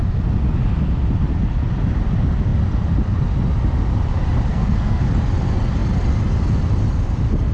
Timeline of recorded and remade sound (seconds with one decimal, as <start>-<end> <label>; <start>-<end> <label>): 0.0-4.5 recorded; 4.5-5.0 remade; 5.0-7.5 recorded

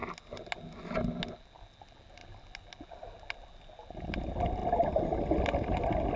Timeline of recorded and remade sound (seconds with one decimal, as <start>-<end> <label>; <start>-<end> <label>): 0.0-6.2 recorded

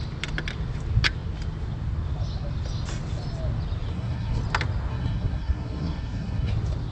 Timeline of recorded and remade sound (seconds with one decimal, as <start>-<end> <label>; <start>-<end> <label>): 0.0-3.9 recorded; 3.9-4.4 remade; 4.4-4.9 recorded; 4.9-6.5 remade; 6.5-6.9 recorded

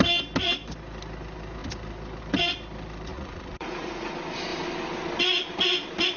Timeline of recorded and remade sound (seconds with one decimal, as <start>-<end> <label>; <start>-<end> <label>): 0.0-3.1 recorded; 3.1-4.1 remade; 4.1-6.2 recorded

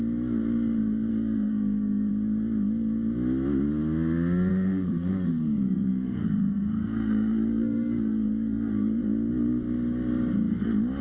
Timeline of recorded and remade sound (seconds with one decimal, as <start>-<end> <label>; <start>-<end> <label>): 0.0-1.1 recorded; 1.1-2.1 remade; 2.1-4.5 recorded; 4.5-9.0 remade; 9.0-11.0 recorded

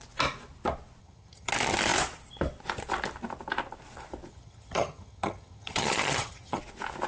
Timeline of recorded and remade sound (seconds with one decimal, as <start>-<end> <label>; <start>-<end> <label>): 0.0-1.0 recorded; 1.0-1.5 remade; 1.5-4.3 recorded; 4.3-6.6 remade; 6.6-7.1 recorded

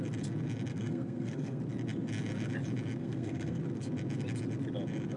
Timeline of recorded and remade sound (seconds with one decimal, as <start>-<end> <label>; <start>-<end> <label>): 0.0-0.7 recorded; 0.7-1.6 remade; 1.6-3.0 recorded; 3.0-3.6 remade; 3.6-5.2 recorded